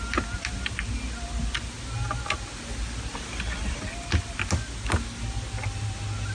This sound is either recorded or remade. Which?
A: recorded